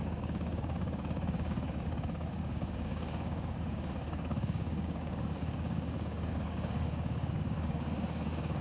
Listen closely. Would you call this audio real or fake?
fake